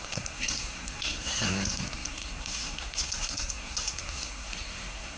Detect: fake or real fake